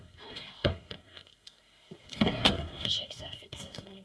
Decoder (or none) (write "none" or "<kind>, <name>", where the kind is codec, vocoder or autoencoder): codec, SNAC